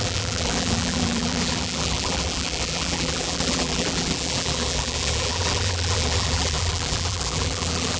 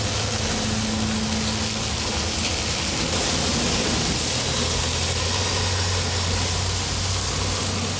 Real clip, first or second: second